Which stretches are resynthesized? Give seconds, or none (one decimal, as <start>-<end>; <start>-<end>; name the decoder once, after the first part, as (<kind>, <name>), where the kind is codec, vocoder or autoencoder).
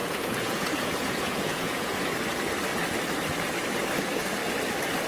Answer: 0.0-2.1 (vocoder, Vocos)